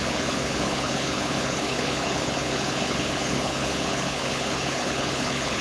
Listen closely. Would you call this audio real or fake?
fake